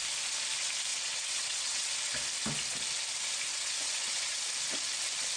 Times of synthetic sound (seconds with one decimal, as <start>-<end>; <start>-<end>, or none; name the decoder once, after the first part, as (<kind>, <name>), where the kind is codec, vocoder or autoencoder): 0.9-1.9 (vocoder, WaveNeXt); 3.5-4.5